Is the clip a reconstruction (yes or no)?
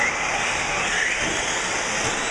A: no